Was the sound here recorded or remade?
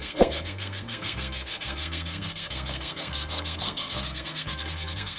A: remade